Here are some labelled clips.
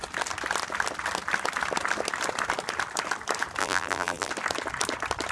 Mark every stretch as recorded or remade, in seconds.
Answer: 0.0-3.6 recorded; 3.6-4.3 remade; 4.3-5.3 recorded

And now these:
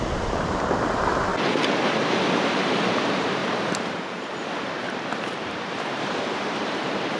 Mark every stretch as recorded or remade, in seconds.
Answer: 0.0-1.3 remade; 1.3-2.9 recorded; 2.9-3.4 remade; 3.4-3.9 recorded; 3.9-7.2 remade

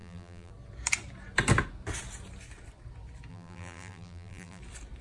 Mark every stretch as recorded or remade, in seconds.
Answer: 0.0-0.5 remade; 0.5-3.3 recorded; 3.3-4.6 remade; 4.6-5.0 recorded